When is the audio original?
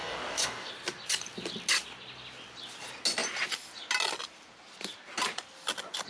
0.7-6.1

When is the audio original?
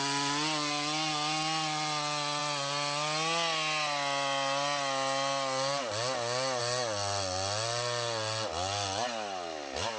0.0-10.0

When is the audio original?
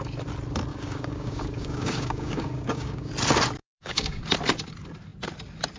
0.0-0.7; 3.1-3.6; 4.2-5.8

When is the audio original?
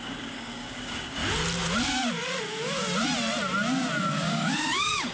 1.2-4.0